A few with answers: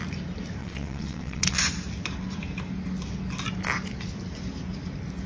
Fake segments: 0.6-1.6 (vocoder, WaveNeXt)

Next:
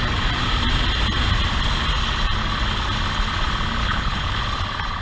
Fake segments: 3.8-4.4 (codec, HILCodec)

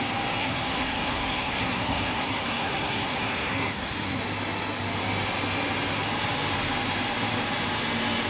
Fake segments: 0.4-4.2 (codec, SNAC)

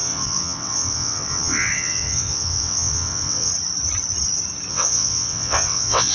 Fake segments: 0.0-3.5 (vocoder, WaveNeXt); 4.7-6.1

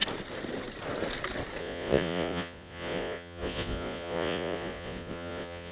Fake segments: 1.6-5.7 (vocoder, Vocos)